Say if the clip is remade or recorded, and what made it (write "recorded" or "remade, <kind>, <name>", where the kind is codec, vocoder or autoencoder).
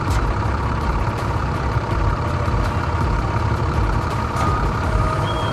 remade, vocoder, BigVGAN v2